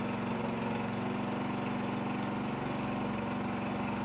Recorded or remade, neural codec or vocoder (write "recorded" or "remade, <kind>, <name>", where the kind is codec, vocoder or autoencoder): recorded